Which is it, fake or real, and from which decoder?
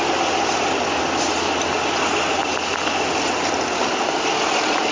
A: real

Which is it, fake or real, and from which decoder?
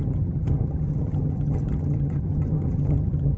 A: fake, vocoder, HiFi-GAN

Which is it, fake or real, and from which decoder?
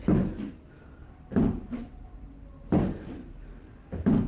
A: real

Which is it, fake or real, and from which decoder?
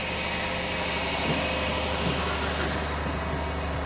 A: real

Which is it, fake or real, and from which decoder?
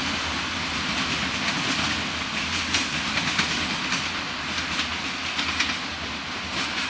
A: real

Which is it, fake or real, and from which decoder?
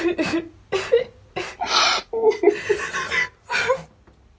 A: real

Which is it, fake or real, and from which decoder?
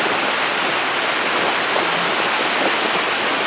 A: real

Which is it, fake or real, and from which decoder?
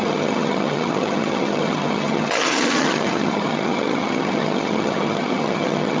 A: fake, vocoder, HiFi-GAN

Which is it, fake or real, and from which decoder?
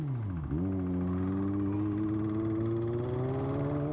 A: real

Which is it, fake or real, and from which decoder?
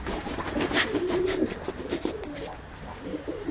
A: fake, vocoder, BigVGAN v2